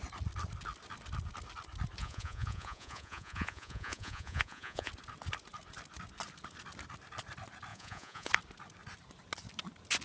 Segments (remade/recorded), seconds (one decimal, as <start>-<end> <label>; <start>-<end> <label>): 0.0-2.0 recorded; 2.0-4.9 remade; 4.9-7.7 recorded; 7.7-8.3 remade; 8.3-10.0 recorded